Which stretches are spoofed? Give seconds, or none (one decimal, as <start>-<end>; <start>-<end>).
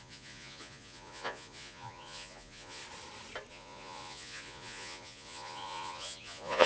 0.0-2.8; 3.5-6.7